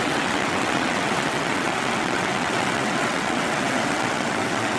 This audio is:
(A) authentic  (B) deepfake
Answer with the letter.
B